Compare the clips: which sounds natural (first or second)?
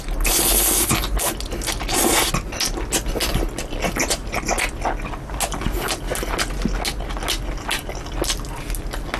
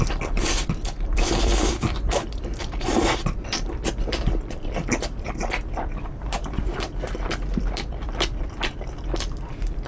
first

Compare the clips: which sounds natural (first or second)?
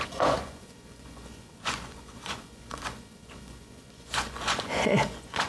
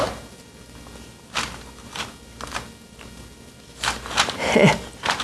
second